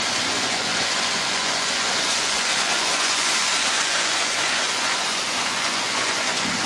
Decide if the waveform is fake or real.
fake